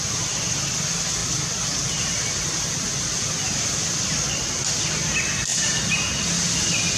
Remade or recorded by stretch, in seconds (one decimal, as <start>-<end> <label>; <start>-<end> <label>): 0.0-7.0 recorded